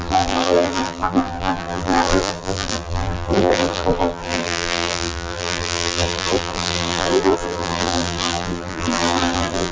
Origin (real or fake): fake